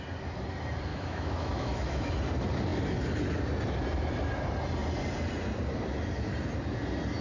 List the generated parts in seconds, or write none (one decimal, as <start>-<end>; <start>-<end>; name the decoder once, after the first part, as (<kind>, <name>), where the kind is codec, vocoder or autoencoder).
0.9-2.1 (autoencoder, DAC-VAE)

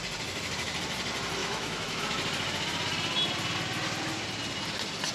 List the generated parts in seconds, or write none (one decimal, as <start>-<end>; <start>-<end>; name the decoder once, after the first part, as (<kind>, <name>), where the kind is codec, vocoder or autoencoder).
1.4-2.0 (autoencoder, DAC-VAE)